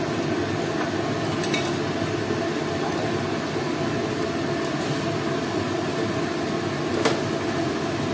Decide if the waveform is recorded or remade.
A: recorded